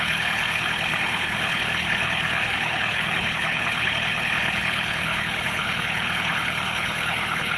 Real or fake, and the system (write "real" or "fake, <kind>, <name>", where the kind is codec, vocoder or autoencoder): fake, codec, HILCodec